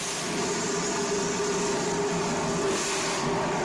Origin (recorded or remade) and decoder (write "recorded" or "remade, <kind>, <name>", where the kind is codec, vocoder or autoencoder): recorded